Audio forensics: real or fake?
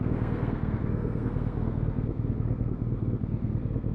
fake